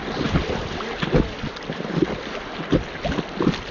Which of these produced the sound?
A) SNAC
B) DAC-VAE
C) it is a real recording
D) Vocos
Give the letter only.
C